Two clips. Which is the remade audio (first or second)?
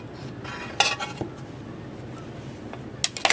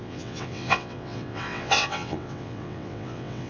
second